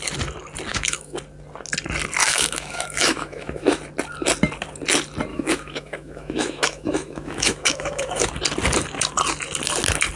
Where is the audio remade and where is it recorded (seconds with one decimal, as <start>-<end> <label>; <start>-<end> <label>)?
0.0-0.7 recorded; 0.7-1.2 remade; 1.2-2.2 recorded; 2.2-3.8 remade; 3.8-5.3 recorded; 5.3-8.3 remade; 8.3-10.2 recorded